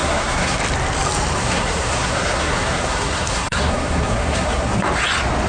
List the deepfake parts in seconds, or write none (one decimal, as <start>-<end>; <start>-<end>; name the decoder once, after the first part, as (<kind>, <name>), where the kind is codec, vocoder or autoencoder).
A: 0.0-0.6 (codec, SNAC); 1.4-4.7